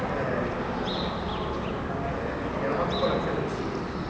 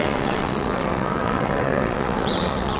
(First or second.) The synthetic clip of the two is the second